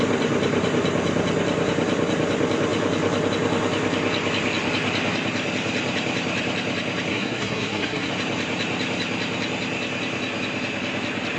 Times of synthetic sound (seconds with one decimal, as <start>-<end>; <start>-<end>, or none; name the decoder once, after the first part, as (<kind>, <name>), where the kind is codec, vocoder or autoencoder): 7.1-8.1 (codec, SNAC)